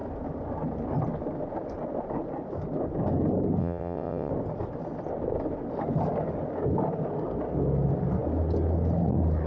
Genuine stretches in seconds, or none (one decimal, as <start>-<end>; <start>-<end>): 0.0-3.6; 4.3-9.5